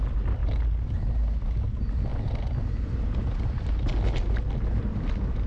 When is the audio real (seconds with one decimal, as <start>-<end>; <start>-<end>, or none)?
0.0-5.5